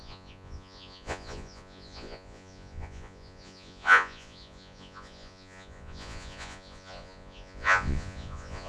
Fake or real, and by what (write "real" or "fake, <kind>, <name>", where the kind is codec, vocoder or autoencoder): fake, vocoder, Vocos